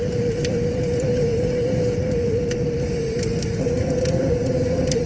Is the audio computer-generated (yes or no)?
no